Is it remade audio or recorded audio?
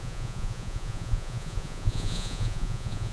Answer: remade